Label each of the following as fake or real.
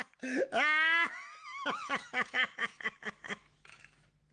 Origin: fake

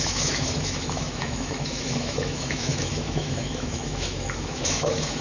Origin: fake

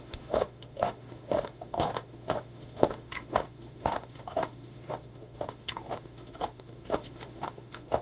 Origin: fake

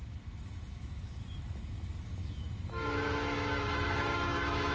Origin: fake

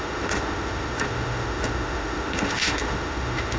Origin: fake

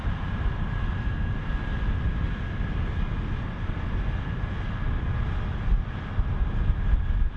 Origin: real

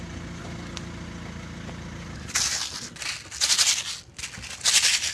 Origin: real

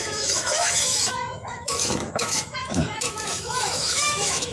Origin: fake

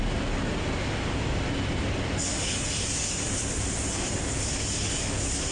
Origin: real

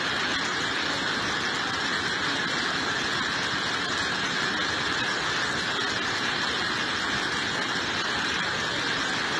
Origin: real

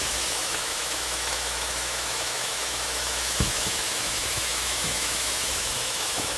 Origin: fake